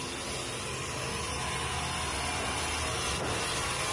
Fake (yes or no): no